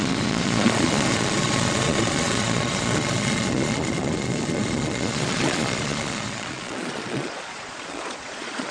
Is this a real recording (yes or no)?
no